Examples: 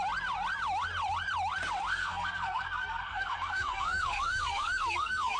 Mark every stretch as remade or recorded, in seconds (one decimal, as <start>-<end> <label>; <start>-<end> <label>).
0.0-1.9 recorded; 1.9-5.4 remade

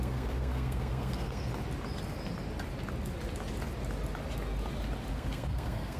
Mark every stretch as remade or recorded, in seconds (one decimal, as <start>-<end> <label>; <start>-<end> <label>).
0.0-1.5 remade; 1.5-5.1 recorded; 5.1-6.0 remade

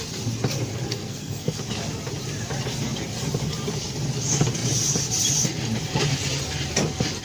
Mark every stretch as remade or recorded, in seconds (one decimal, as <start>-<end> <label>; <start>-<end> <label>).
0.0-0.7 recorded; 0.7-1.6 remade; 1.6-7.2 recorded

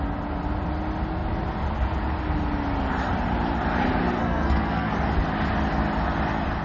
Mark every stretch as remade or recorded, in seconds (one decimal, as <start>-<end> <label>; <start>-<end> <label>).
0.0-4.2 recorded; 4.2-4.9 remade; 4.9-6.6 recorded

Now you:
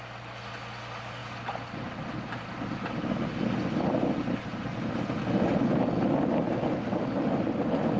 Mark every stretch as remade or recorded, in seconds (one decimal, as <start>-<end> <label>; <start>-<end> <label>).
0.0-8.0 recorded